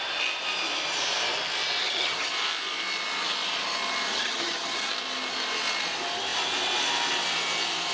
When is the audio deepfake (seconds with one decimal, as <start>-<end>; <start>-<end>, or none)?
1.8-2.3; 4.1-4.9